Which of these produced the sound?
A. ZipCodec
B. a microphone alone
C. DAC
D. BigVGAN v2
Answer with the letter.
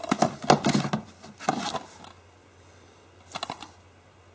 B